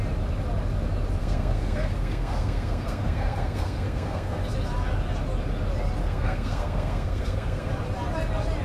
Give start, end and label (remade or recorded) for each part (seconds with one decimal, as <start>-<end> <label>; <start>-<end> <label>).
0.0-1.2 recorded; 1.2-4.4 remade; 4.4-6.0 recorded; 6.0-7.7 remade; 7.7-8.6 recorded